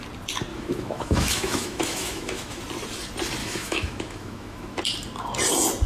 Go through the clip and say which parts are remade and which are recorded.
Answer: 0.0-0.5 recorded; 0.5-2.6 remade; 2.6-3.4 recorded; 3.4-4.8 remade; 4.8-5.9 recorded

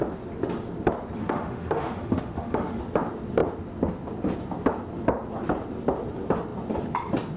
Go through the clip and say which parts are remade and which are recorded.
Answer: 0.0-1.2 recorded; 1.2-2.8 remade; 2.8-7.4 recorded

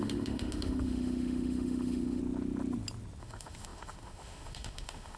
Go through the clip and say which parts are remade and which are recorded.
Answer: 0.0-2.2 remade; 2.2-3.2 recorded; 3.2-5.2 remade

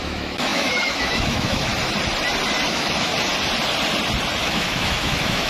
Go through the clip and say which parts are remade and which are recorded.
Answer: 0.0-1.7 remade; 1.7-2.7 recorded; 2.7-3.1 remade; 3.1-4.4 recorded; 4.4-5.5 remade